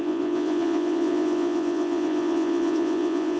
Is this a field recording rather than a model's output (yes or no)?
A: no